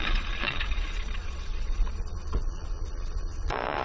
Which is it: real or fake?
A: fake